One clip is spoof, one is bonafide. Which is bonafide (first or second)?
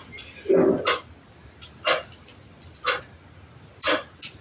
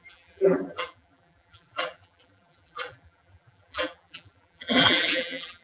first